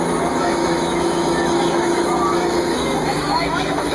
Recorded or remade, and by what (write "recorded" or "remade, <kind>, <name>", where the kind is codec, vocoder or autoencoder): remade, autoencoder, DAC-VAE